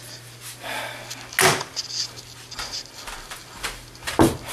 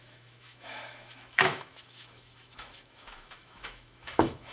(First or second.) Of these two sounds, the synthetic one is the second